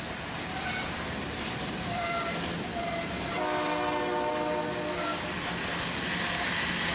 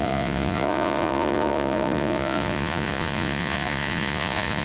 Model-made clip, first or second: second